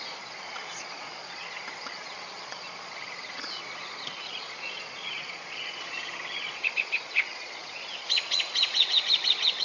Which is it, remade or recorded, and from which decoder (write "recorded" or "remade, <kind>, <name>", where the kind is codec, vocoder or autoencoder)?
remade, vocoder, Vocos